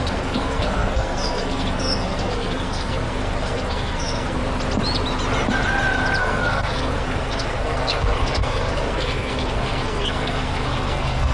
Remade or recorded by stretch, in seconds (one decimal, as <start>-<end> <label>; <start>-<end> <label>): 0.0-4.4 remade; 4.4-6.2 recorded; 6.2-11.3 remade